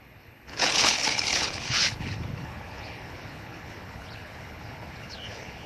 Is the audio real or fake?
fake